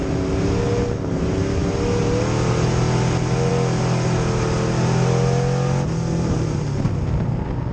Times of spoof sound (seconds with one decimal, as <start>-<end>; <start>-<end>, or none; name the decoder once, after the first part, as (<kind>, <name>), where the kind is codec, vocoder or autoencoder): none